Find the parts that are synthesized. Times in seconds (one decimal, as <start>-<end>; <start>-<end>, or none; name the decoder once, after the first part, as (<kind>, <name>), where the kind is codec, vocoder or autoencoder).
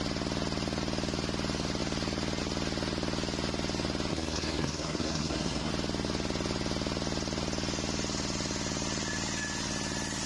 4.1-5.7 (codec, SNAC)